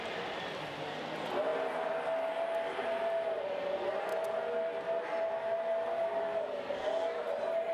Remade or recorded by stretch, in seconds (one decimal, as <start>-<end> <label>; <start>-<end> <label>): 0.0-7.7 recorded